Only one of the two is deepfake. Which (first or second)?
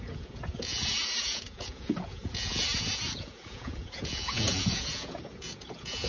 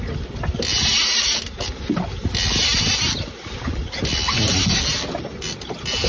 first